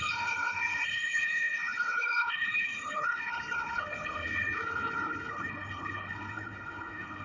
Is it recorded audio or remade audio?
remade